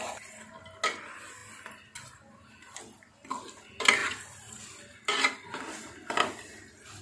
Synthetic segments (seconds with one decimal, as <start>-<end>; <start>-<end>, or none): none